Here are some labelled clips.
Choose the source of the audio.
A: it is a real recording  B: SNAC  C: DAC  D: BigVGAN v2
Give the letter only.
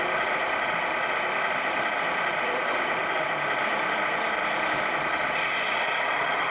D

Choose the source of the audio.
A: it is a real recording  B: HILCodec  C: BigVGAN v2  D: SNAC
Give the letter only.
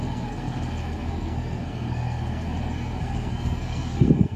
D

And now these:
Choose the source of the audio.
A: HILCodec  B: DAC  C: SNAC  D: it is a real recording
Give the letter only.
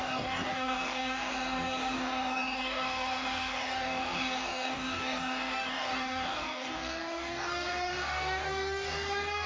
B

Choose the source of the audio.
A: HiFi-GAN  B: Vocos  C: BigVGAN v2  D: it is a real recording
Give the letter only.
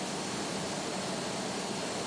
D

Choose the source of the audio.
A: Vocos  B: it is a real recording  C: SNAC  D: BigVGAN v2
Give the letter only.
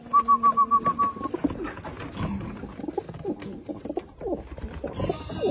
B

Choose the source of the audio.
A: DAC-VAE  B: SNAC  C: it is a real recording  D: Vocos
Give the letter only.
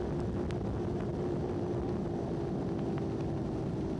C